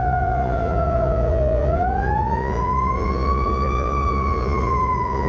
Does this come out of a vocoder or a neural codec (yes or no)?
yes